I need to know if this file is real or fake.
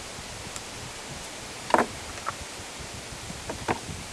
real